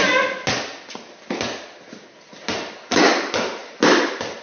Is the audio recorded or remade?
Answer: recorded